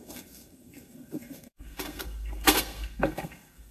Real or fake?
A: fake